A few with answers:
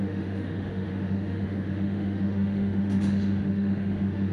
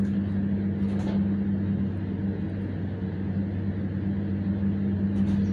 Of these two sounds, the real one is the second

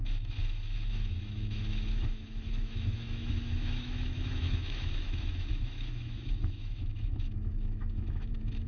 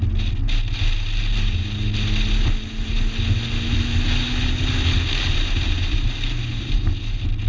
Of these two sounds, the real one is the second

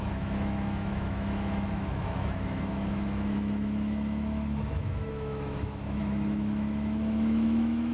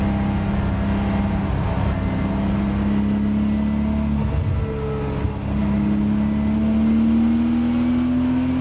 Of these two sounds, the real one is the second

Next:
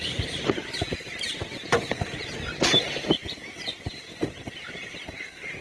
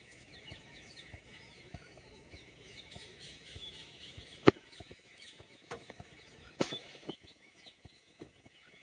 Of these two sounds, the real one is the first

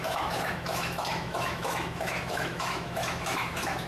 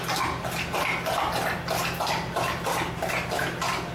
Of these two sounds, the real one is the second